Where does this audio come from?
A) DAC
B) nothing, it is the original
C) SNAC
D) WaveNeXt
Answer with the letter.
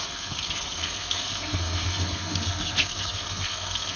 C